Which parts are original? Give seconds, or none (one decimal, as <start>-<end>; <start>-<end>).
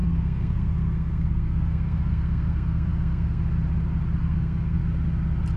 3.4-4.2; 4.8-5.6